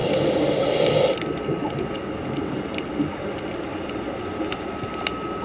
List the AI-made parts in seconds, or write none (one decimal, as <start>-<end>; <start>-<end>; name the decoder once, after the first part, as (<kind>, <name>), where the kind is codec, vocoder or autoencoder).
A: 0.0-3.2 (vocoder, BigVGAN v2)